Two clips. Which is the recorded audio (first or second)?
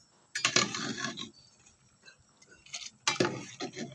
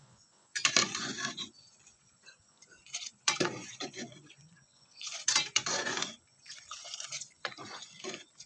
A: first